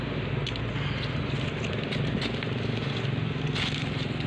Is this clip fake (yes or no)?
no